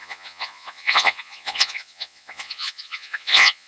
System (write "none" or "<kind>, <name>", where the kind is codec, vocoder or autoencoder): vocoder, Vocos